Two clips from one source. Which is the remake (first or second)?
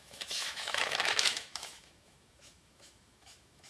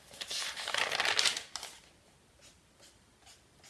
first